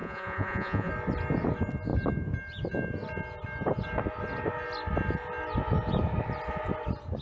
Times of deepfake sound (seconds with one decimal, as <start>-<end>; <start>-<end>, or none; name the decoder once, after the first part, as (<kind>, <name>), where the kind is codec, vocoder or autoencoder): 0.0-0.9 (vocoder, Vocos)